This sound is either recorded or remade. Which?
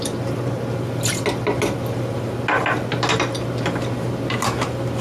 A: recorded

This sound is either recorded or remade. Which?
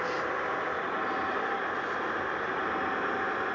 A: recorded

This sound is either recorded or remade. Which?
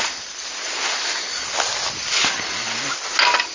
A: recorded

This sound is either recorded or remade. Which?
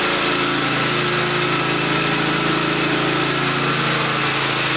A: recorded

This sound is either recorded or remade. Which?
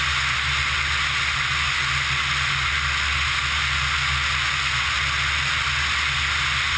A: recorded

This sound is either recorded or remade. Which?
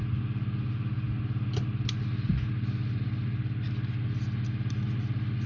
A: recorded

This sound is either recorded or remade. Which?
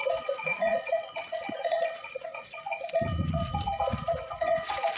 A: remade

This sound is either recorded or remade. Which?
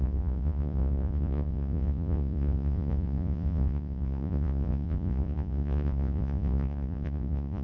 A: remade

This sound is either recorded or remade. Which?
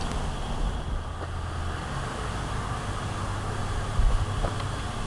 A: recorded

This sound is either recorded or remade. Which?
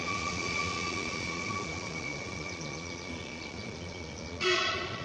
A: remade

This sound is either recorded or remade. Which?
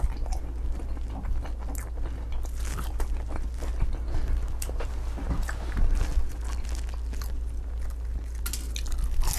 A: recorded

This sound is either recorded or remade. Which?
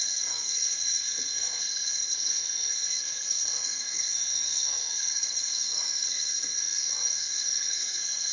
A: remade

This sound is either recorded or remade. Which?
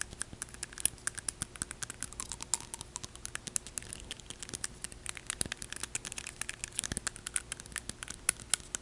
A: recorded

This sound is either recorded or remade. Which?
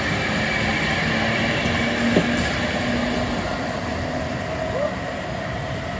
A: recorded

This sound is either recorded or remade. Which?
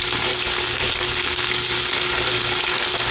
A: recorded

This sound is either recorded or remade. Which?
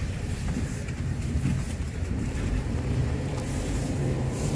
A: remade